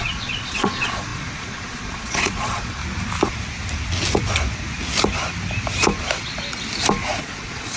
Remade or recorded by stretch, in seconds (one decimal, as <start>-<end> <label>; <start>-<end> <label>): 0.0-2.8 remade; 2.8-7.2 recorded; 7.2-7.8 remade